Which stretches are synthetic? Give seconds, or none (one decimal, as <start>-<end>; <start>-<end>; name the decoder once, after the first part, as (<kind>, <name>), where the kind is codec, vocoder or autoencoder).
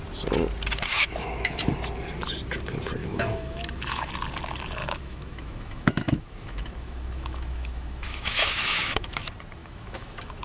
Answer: 0.9-1.7 (autoencoder, DAC-VAE); 3.0-4.1; 4.8-9.2; 9.6-10.4